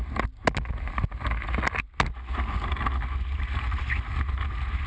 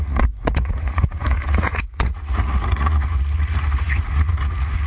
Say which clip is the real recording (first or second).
first